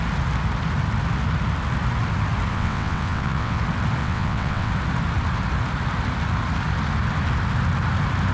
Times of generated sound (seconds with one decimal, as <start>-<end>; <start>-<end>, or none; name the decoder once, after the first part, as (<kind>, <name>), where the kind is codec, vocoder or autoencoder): 2.5-3.6 (vocoder, WaveNeXt); 4.0-4.7